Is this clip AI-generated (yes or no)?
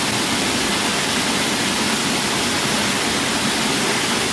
no